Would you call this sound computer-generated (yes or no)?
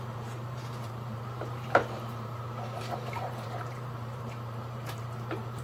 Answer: yes